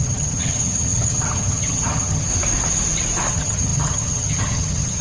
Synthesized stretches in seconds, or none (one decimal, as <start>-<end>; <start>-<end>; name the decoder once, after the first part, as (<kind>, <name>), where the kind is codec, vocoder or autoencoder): 0.0-2.3 (vocoder, HiFi-GAN); 3.3-5.0